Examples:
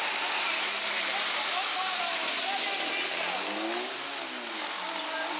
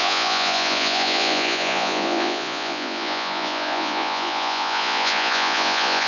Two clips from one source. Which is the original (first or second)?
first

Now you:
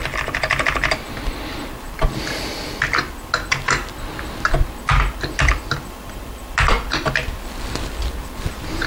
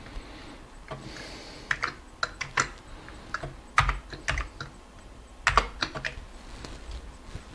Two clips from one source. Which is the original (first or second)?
second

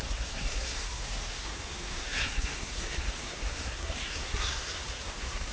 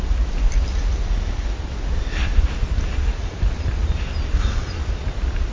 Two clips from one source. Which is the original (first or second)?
second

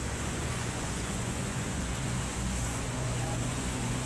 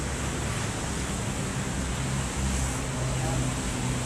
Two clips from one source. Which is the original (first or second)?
second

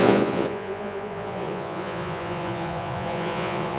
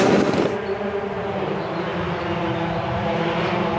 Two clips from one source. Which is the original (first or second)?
second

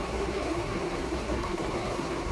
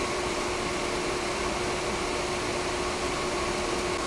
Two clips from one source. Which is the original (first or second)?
second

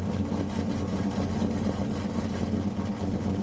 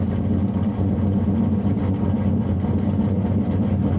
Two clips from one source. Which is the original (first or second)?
first